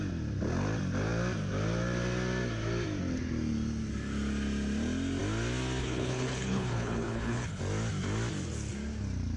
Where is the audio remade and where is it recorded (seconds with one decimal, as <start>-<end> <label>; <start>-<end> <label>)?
0.0-5.8 recorded; 5.8-7.6 remade; 7.6-9.4 recorded